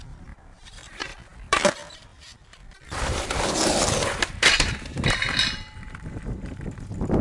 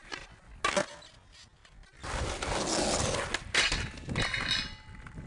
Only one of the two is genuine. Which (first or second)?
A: second